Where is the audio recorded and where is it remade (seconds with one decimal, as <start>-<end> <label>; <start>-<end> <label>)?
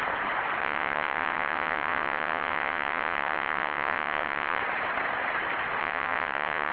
0.0-0.6 recorded; 0.6-4.6 remade; 4.6-5.8 recorded; 5.8-6.7 remade